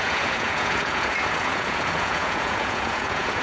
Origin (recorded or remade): remade